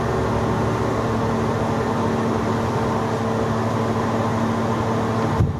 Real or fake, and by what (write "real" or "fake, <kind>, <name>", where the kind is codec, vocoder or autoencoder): real